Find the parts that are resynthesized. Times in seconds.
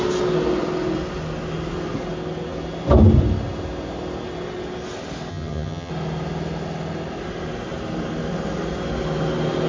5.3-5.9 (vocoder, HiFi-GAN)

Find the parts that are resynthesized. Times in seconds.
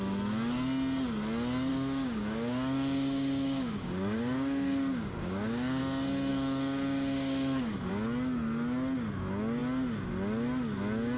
1.7-5.8 (codec, DAC); 6.3-7.9